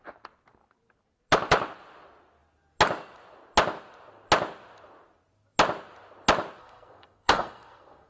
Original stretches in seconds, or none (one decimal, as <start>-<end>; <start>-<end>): 0.0-6.6